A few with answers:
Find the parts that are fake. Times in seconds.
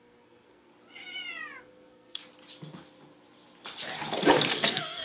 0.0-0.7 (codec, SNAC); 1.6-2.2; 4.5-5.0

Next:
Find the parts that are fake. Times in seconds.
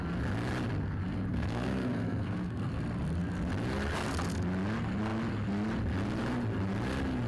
1.3-2.7 (codec, SNAC)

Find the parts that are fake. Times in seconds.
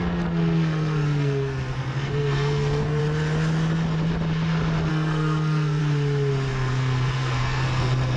0.0-3.0 (codec, SNAC); 4.9-5.8; 6.5-8.2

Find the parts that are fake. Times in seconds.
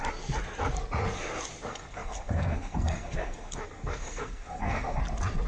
1.7-5.0 (codec, SNAC)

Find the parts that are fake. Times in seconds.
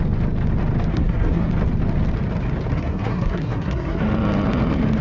0.9-1.5 (codec, SNAC); 2.7-4.0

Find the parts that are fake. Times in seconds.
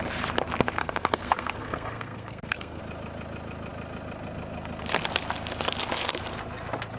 0.8-2.8 (codec, SNAC)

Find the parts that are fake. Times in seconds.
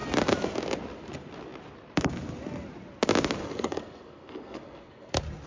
3.4-5.1 (codec, SNAC)